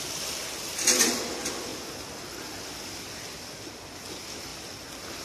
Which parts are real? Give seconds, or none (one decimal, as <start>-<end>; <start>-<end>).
0.0-5.2